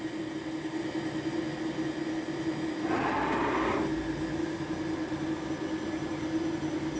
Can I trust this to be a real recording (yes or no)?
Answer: yes